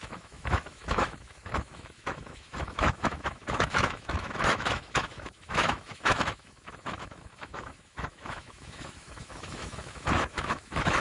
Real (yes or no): no